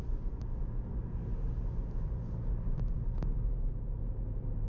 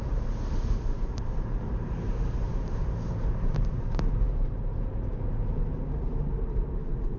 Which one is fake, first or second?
second